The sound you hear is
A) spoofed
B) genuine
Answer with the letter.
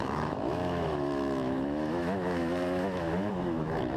A